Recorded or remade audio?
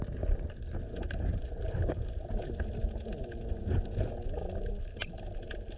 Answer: recorded